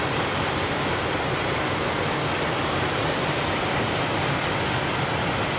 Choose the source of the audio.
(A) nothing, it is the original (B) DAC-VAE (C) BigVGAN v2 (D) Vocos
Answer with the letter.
A